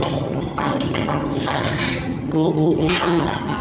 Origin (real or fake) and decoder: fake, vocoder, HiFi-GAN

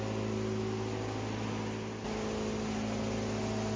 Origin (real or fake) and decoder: real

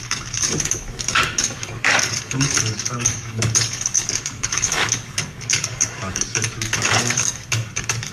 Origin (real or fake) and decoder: fake, codec, DAC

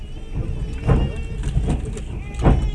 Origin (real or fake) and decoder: real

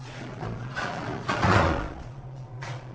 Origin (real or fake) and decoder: fake, vocoder, Vocos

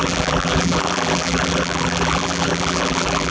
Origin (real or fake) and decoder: fake, vocoder, BigVGAN v2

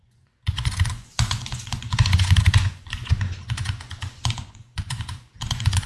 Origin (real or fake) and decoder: fake, vocoder, Vocos